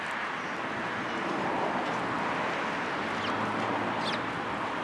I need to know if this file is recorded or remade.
recorded